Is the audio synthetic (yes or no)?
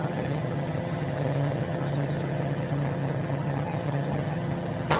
yes